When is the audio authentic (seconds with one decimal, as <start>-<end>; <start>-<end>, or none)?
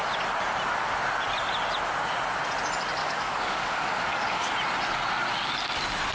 0.0-3.0; 4.5-6.1